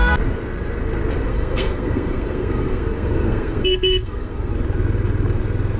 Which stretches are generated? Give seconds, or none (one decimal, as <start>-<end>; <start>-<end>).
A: 1.3-4.5